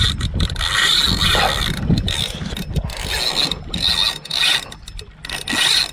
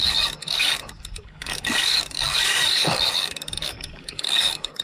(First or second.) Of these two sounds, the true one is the first